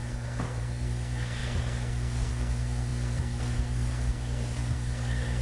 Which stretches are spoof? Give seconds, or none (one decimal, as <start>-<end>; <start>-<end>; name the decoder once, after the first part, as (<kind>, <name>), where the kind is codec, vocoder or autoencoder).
0.0-5.4 (codec, SNAC)